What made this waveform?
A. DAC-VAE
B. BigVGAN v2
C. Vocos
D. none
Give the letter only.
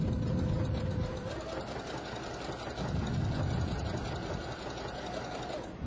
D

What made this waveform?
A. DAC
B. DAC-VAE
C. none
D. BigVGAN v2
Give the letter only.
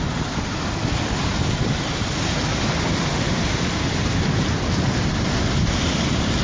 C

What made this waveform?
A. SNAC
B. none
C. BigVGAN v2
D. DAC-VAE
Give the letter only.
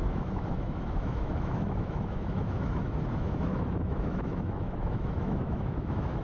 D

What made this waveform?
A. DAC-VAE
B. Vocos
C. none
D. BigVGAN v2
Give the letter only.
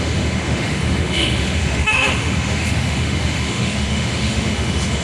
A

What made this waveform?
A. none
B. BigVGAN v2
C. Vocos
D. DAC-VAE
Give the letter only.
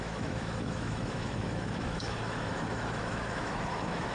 D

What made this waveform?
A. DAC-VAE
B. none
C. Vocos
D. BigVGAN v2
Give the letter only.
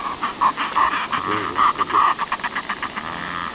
B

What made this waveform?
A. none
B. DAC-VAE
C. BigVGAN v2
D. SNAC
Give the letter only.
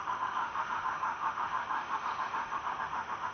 B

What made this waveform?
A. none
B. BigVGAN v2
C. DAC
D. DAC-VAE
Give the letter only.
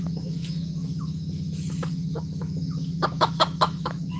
D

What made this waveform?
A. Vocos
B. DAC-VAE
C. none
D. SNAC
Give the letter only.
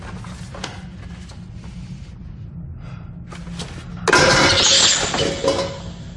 C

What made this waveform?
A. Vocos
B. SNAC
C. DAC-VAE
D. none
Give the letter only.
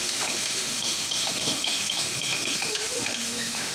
C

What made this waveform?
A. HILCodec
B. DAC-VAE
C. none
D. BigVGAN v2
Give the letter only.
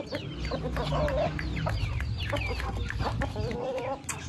C